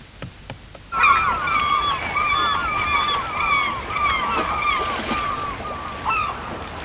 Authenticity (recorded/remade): recorded